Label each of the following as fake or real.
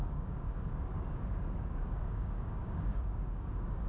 fake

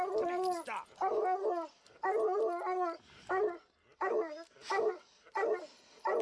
real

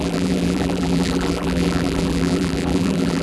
fake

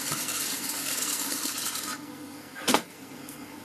fake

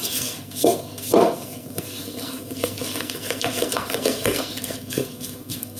fake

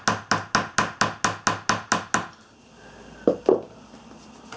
real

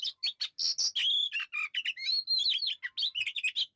real